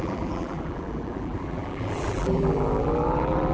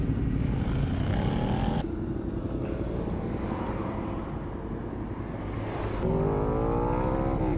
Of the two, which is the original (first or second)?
second